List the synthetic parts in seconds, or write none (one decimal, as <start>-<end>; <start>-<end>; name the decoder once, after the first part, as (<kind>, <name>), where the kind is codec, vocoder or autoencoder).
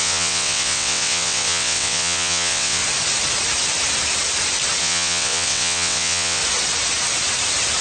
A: 0.0-2.8 (vocoder, WaveNeXt); 4.8-6.4